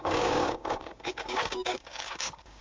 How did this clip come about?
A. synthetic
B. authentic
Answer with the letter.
A